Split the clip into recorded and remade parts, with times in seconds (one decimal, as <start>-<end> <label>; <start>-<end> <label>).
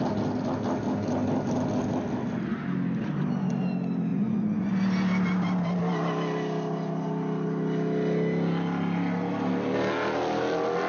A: 0.0-4.1 recorded; 4.1-4.7 remade; 4.7-10.9 recorded